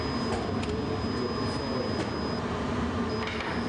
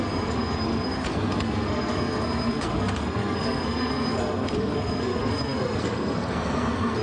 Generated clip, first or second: second